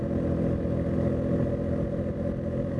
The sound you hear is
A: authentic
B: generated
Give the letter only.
A